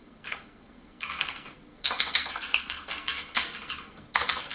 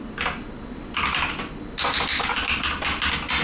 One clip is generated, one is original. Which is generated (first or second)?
first